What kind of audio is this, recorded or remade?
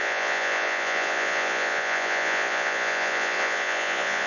remade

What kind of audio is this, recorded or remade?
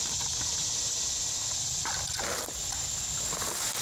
recorded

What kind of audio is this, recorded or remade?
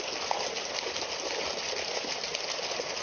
recorded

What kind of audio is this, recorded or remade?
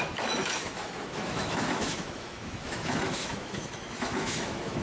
remade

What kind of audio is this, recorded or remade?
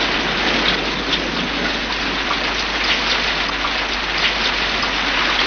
recorded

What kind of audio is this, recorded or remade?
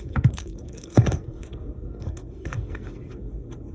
remade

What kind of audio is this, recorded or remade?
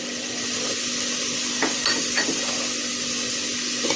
recorded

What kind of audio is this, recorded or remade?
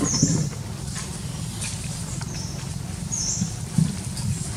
recorded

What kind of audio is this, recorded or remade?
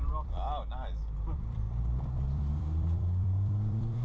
remade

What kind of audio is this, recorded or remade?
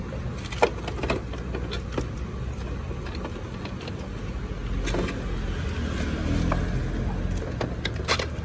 recorded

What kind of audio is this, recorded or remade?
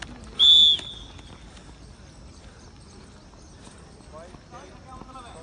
recorded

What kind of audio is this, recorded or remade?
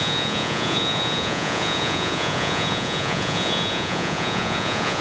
remade